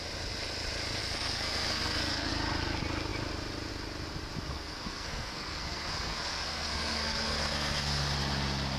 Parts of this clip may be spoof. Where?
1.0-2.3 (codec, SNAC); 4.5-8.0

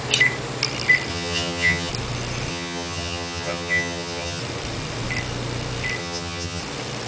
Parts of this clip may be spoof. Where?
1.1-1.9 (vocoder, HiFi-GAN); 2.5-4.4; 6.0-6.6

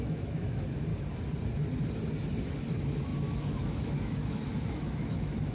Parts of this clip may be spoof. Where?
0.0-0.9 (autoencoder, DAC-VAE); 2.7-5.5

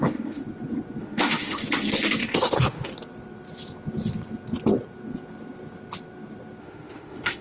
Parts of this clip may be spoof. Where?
0.0-0.4 (autoencoder, DAC-VAE); 1.0-1.6; 2.2-2.9; 6.6-7.4

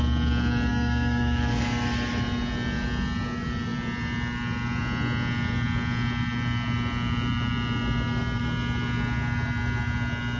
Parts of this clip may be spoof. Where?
0.7-1.6 (codec, DAC)

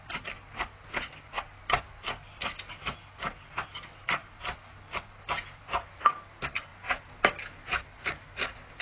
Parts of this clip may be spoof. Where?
none